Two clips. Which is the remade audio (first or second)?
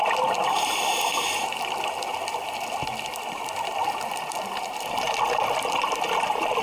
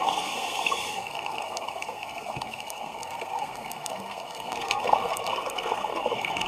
second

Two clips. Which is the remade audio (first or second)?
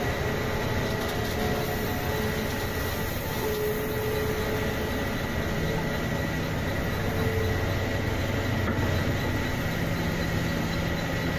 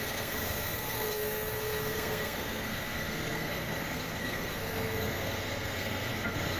second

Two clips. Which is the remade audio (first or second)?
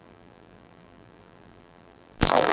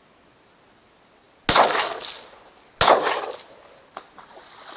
first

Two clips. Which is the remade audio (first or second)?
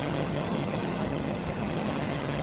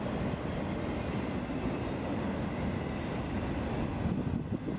first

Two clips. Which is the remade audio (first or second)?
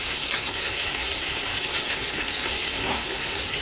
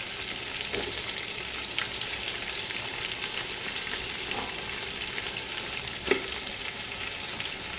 first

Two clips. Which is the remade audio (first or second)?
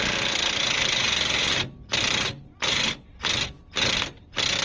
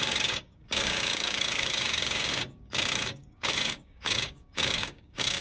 second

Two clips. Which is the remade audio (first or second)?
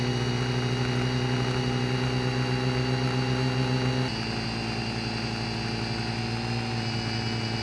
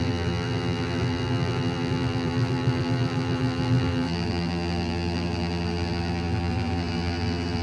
second